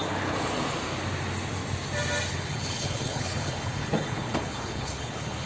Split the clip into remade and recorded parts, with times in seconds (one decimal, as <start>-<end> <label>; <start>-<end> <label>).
0.0-2.3 recorded; 2.3-5.5 remade